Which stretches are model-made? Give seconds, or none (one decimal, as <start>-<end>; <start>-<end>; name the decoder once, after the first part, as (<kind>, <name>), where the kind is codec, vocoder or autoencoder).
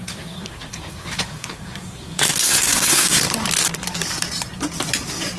0.0-3.2 (codec, SNAC)